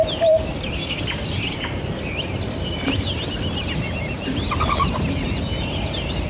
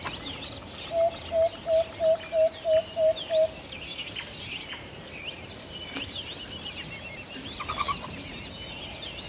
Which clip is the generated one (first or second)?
first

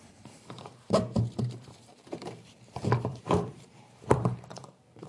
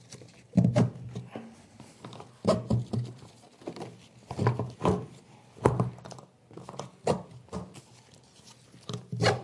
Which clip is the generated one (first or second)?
first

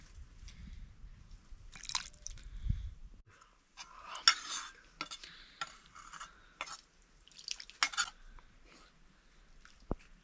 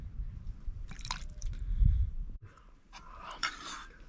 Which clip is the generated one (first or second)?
second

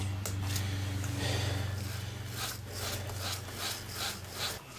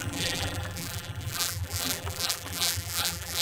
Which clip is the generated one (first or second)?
second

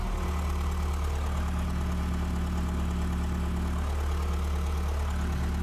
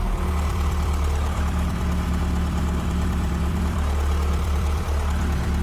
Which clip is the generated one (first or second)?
second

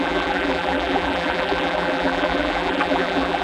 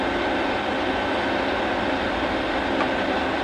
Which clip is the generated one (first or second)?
first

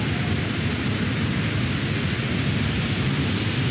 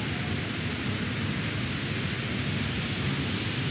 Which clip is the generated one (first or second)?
first